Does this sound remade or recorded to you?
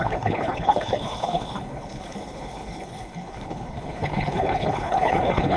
remade